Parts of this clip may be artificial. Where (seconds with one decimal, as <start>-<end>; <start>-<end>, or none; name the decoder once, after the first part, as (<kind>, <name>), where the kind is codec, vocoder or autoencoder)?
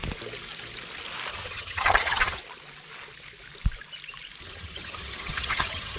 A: 1.3-2.4 (vocoder, HiFi-GAN); 4.4-6.0